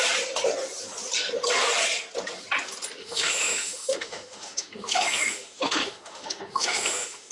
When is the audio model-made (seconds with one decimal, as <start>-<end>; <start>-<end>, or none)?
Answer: 3.0-7.3